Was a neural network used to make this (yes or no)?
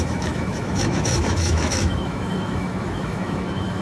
yes